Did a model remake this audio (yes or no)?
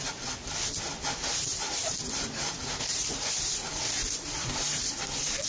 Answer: no